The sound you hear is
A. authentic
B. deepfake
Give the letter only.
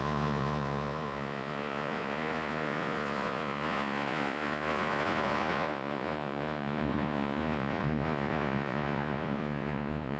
B